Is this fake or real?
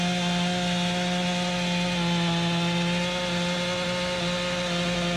real